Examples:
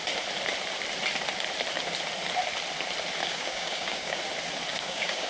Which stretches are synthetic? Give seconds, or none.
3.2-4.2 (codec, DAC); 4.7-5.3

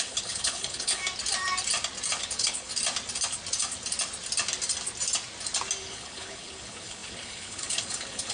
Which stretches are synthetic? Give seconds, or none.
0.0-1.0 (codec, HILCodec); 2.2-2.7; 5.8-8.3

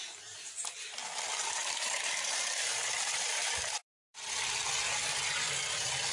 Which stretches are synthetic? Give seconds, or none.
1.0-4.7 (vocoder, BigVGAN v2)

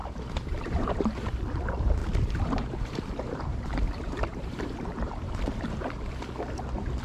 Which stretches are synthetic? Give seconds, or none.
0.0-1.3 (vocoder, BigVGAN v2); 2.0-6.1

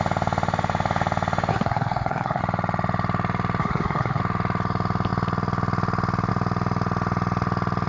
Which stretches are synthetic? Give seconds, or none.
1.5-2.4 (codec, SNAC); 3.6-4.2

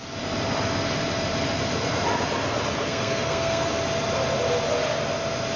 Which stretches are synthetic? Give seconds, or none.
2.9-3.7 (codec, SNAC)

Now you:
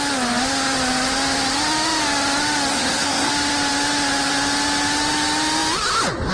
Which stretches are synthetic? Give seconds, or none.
2.7-3.3 (codec, SNAC)

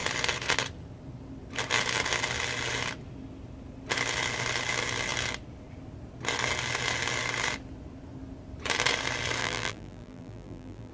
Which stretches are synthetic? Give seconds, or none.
9.4-10.9 (vocoder, BigVGAN v2)